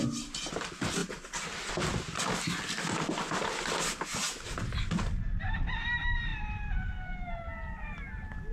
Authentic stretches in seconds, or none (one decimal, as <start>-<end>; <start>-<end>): 0.0-8.5